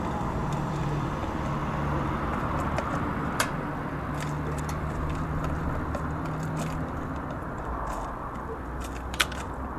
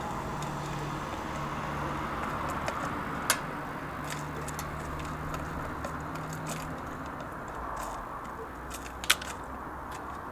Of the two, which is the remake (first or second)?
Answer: first